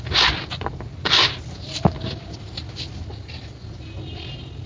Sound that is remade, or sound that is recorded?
recorded